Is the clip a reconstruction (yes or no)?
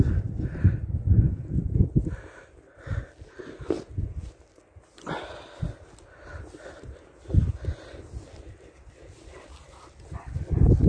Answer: no